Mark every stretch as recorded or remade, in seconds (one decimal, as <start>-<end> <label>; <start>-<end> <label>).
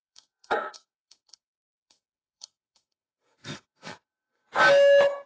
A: 0.0-4.5 remade; 4.5-5.3 recorded